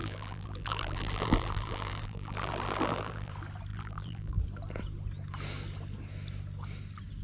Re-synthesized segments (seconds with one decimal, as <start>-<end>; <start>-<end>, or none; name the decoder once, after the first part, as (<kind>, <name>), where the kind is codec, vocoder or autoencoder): 0.0-3.3 (vocoder, BigVGAN v2); 3.7-4.4